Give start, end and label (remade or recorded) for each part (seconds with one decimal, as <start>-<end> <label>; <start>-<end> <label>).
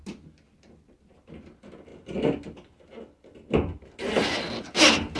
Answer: 0.0-5.2 recorded